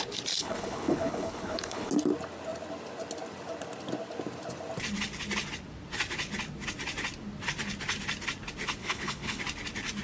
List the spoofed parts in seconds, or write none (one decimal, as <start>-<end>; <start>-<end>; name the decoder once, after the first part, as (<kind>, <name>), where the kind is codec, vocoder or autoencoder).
0.4-1.9 (codec, HILCodec); 8.8-9.4